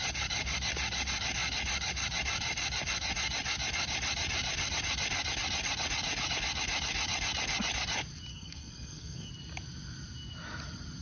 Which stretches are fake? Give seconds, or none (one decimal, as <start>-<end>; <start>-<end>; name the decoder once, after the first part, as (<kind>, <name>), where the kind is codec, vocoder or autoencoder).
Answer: 8.3-9.3 (codec, SNAC)